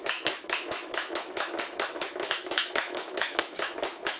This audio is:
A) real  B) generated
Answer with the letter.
B